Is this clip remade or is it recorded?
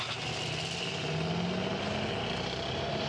recorded